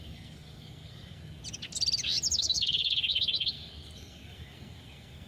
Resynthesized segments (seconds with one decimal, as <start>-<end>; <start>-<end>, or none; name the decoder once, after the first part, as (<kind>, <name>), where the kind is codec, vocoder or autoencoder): 0.0-1.4 (codec, SNAC); 2.4-5.3